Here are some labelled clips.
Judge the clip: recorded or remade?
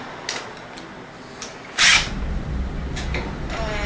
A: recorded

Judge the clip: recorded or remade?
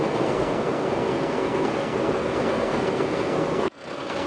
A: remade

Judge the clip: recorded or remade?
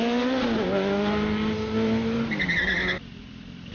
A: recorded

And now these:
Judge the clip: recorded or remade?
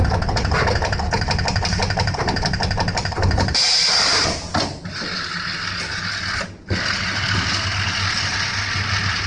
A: recorded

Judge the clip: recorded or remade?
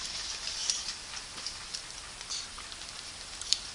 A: recorded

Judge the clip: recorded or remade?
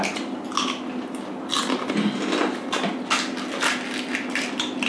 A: recorded